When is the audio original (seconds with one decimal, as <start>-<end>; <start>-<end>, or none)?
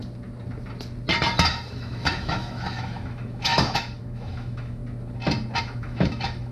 0.0-1.7; 4.8-5.6